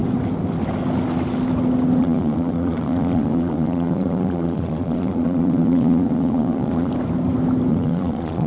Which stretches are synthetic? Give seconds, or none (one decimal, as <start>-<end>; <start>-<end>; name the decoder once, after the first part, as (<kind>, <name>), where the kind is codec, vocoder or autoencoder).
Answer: 2.0-6.9 (vocoder, Vocos); 7.7-8.5